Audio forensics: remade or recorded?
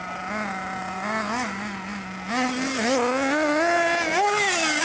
recorded